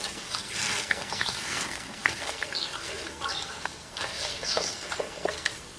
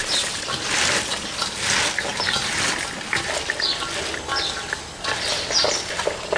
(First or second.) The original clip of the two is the second